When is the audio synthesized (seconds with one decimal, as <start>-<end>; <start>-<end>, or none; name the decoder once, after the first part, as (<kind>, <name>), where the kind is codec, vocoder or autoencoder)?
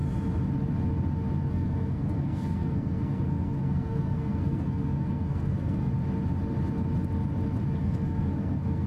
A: 1.5-5.9 (codec, SNAC); 7.8-8.9